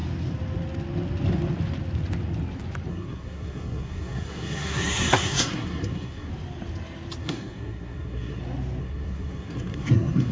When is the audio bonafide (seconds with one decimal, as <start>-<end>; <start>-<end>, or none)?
0.0-2.9; 6.3-7.2; 8.4-8.8